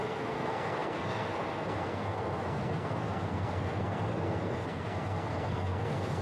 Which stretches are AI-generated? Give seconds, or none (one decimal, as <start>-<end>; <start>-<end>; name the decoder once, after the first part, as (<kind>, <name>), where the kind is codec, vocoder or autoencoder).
0.0-6.2 (codec, SNAC)

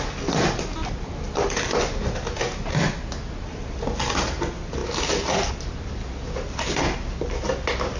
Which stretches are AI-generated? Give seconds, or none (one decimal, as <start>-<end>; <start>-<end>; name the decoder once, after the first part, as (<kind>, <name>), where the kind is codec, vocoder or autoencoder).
none

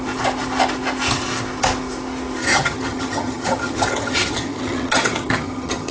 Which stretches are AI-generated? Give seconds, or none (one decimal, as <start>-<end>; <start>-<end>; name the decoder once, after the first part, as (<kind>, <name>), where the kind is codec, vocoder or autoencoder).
2.4-5.9 (vocoder, HiFi-GAN)

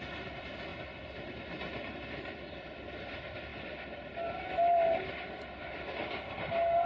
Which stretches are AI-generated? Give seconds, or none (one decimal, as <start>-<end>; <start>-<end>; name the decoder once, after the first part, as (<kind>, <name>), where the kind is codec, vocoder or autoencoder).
none

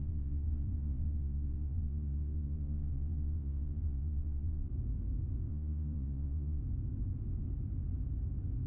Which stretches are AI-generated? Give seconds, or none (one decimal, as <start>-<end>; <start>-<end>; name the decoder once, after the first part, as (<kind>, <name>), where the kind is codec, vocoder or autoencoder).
0.0-4.7 (vocoder, Vocos); 5.5-6.6